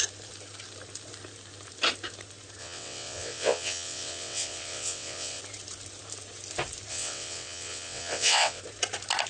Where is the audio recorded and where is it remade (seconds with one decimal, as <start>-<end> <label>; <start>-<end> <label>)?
0.0-2.6 recorded; 2.6-5.4 remade; 5.4-6.9 recorded; 6.9-8.6 remade; 8.6-9.3 recorded